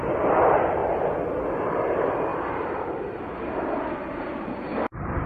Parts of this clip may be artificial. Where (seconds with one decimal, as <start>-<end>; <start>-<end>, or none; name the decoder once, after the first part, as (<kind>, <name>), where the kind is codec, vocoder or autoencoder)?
0.0-0.8 (vocoder, BigVGAN v2); 1.3-2.3; 2.8-5.3